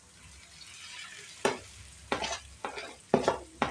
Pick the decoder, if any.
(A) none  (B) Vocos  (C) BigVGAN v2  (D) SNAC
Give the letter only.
A